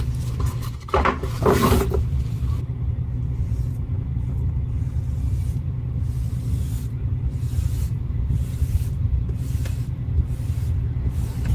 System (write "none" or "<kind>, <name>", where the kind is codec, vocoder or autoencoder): vocoder, BigVGAN v2